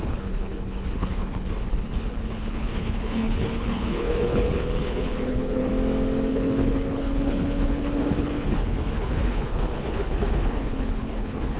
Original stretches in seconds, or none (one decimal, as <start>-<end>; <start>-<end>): 5.7-6.3